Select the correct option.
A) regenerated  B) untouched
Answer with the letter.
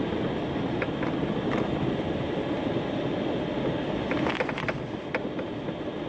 B